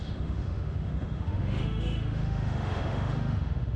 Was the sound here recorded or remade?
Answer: remade